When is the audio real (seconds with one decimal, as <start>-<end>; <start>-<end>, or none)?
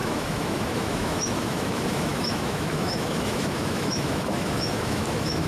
none